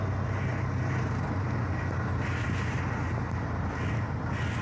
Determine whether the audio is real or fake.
real